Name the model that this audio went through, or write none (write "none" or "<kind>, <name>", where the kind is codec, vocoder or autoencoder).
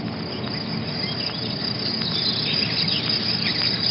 none